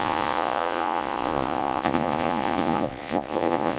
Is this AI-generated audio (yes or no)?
yes